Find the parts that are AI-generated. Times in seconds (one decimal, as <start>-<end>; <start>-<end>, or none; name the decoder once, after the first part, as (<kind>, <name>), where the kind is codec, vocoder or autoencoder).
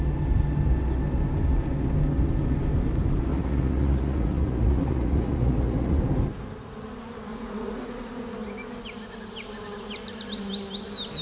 3.3-6.0 (vocoder, Vocos); 7.3-8.1